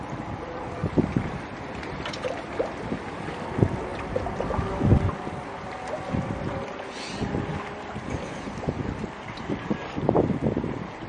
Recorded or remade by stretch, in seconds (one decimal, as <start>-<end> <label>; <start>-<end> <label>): 0.0-3.9 remade; 3.9-7.7 recorded; 7.7-11.1 remade